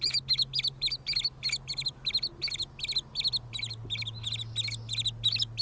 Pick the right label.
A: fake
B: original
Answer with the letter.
B